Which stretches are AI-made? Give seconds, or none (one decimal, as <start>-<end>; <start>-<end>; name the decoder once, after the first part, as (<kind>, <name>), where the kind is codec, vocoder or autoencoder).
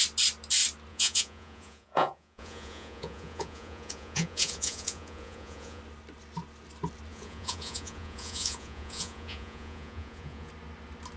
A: 0.9-5.8 (vocoder, Vocos); 7.1-10.5